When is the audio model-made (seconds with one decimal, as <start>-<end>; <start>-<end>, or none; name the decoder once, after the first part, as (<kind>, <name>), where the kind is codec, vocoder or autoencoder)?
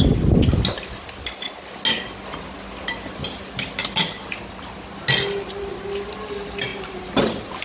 none